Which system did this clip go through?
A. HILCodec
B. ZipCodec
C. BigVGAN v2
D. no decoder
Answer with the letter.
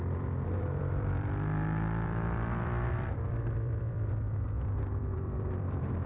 C